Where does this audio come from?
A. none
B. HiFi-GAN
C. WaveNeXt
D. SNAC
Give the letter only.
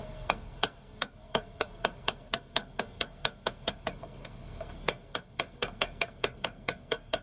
D